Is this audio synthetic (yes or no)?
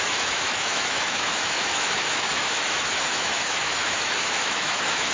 yes